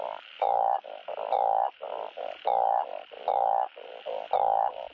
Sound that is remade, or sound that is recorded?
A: recorded